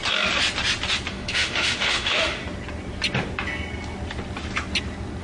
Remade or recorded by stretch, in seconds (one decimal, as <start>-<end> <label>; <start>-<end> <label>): 0.0-1.1 recorded; 1.1-2.4 remade; 2.4-5.2 recorded